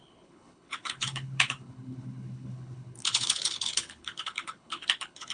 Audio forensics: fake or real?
fake